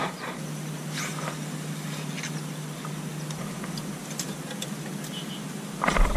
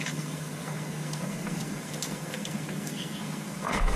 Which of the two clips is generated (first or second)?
second